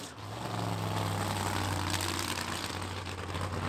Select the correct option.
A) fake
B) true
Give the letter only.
B